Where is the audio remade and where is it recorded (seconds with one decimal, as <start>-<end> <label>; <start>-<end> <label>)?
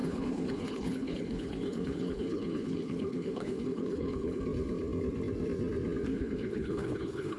0.0-4.4 remade; 4.4-6.1 recorded; 6.1-7.4 remade